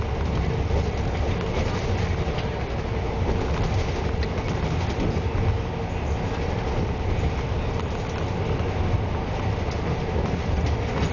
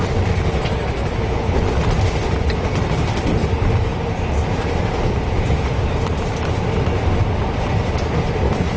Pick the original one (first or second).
first